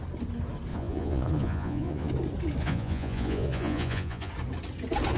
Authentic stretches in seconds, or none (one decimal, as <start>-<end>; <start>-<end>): 0.0-0.7; 2.1-2.6; 4.3-5.2

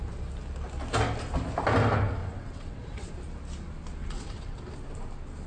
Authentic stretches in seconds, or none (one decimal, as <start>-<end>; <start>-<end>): 0.0-2.2; 3.1-4.0; 4.6-5.5